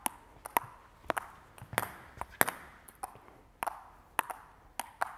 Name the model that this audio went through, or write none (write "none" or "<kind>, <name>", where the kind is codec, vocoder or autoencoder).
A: none